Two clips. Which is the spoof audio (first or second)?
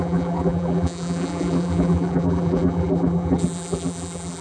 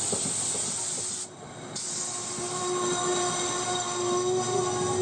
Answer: first